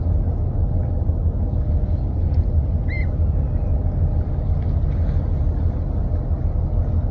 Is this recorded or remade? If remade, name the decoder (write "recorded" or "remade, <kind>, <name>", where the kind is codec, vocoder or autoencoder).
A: recorded